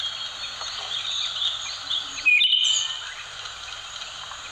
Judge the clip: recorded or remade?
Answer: recorded